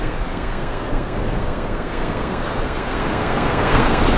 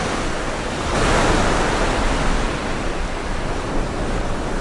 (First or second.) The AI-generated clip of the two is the first